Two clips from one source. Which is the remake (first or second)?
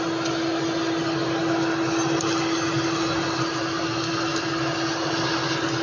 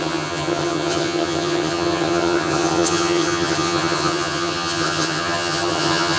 second